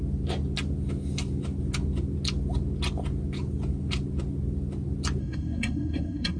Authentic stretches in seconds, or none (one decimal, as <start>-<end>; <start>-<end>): 0.0-5.2